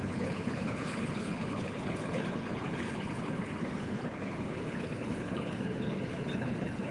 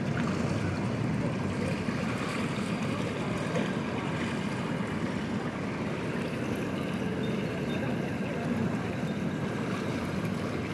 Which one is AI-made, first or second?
first